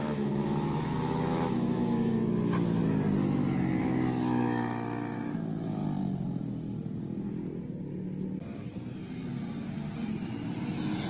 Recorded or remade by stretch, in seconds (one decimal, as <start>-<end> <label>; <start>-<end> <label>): 0.0-2.8 remade; 2.8-3.8 recorded; 3.8-5.8 remade; 5.8-11.1 recorded